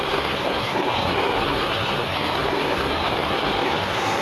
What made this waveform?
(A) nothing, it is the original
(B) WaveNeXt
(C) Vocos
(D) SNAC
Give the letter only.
D